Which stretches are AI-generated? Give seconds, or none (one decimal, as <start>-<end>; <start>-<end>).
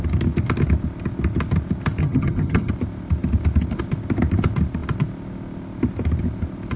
2.0-2.7